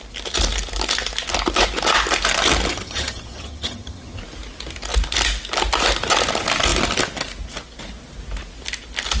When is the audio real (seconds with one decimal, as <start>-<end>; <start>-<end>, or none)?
0.0-2.7; 4.2-9.2